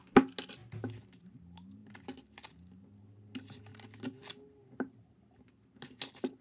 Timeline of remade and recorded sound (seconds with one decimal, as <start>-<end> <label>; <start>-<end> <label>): 0.0-6.4 recorded